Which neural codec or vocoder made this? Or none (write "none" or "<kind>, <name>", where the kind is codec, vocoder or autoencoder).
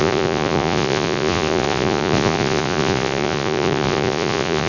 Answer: vocoder, Vocos